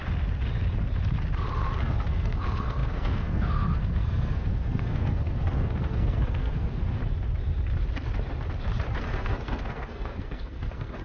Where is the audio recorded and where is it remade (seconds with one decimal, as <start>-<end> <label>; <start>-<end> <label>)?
0.0-1.8 recorded; 1.8-7.0 remade; 7.0-9.0 recorded; 9.0-11.0 remade

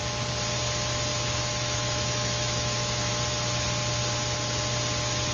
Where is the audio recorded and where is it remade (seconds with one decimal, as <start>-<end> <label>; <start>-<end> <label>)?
0.0-1.1 recorded; 1.1-3.1 remade; 3.1-5.3 recorded